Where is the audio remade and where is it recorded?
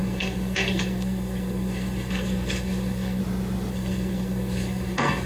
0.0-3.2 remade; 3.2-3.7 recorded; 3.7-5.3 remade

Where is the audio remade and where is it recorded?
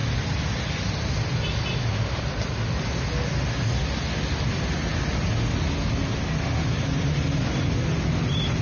0.0-8.6 recorded